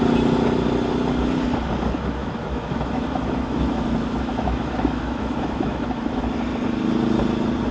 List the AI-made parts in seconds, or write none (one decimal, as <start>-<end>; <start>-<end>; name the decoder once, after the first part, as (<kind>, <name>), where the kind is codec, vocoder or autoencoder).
2.2-6.2 (autoencoder, DAC-VAE)